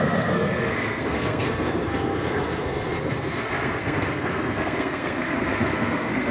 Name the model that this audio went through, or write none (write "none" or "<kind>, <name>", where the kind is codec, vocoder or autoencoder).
codec, SNAC